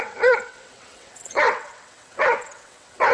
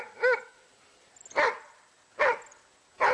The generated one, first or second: first